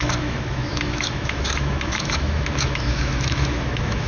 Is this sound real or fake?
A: fake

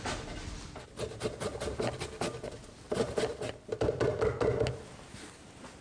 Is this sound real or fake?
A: real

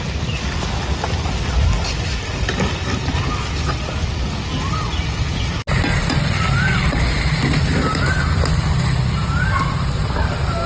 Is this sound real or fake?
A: real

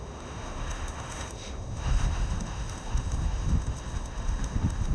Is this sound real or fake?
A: fake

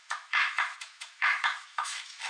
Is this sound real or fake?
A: fake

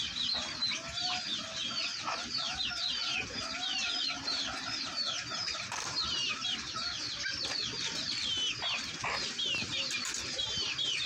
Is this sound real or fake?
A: real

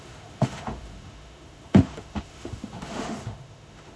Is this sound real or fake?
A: fake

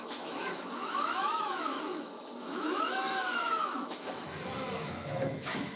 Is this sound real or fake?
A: fake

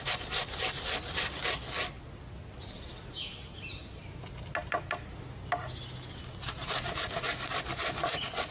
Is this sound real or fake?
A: real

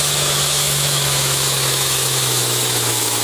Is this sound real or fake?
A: fake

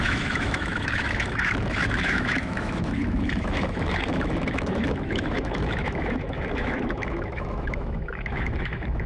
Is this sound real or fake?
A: fake